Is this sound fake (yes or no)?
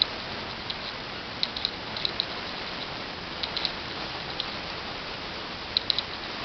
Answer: no